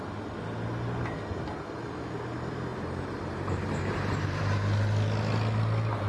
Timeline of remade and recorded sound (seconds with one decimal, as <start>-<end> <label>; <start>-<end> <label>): 0.0-2.7 recorded; 2.7-4.4 remade; 4.4-6.1 recorded